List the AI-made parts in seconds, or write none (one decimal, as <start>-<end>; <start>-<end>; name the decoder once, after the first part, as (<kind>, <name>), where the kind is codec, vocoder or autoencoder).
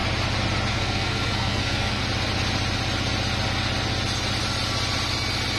0.7-2.0 (codec, SNAC)